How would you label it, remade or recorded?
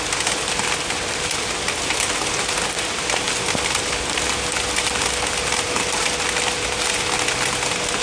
recorded